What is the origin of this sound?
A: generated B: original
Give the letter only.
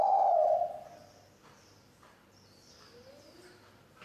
B